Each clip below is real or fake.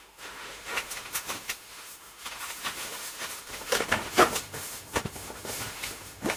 fake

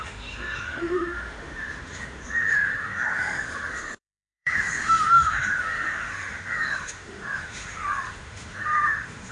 fake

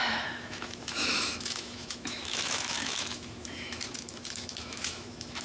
fake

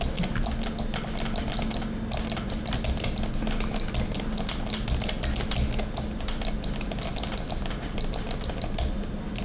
real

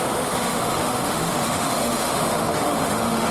fake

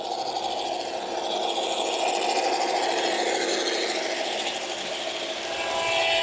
real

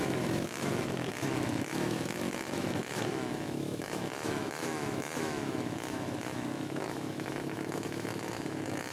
fake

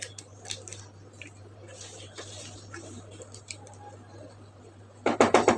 real